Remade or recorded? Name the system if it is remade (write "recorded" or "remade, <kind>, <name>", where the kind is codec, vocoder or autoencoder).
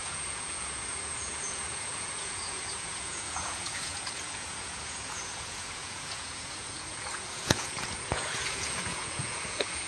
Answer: remade, vocoder, Vocos